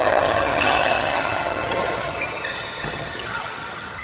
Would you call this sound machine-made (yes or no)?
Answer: yes